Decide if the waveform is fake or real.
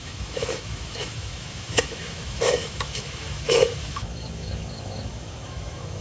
fake